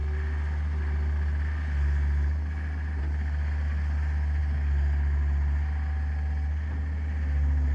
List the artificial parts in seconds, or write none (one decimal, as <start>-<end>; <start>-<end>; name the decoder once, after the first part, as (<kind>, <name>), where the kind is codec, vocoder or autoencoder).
none